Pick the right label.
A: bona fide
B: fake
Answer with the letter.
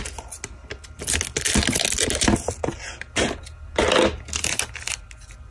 A